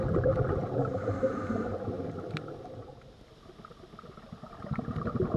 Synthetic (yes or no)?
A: no